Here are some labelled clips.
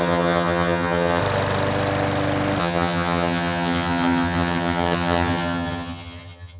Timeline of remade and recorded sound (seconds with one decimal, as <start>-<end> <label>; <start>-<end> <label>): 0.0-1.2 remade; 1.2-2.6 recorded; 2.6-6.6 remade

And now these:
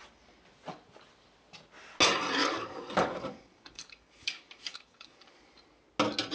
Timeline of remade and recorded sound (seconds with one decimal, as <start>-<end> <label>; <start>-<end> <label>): 0.0-2.4 recorded; 2.4-5.4 remade; 5.4-6.3 recorded

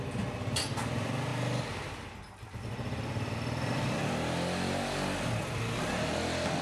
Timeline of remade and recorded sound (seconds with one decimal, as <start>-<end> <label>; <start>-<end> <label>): 0.0-6.6 recorded

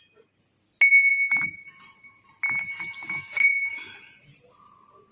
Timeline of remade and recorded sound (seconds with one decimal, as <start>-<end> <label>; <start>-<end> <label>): 0.0-5.1 recorded

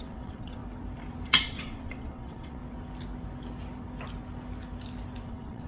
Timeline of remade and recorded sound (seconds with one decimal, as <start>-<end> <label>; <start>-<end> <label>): 0.0-0.6 remade; 0.6-1.3 recorded; 1.3-2.6 remade; 2.6-5.3 recorded; 5.3-5.7 remade

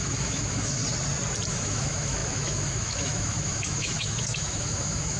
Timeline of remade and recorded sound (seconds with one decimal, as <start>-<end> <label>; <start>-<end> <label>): 0.0-0.8 remade; 0.8-1.5 recorded; 1.5-5.2 remade

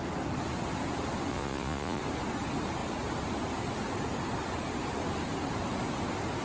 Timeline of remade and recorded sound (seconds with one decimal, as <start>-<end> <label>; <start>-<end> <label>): 0.0-1.3 recorded; 1.3-2.0 remade; 2.0-6.4 recorded